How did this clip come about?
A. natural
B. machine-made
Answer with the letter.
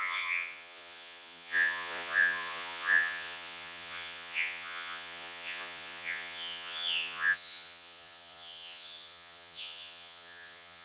B